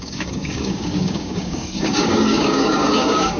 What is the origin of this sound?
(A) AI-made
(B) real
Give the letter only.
A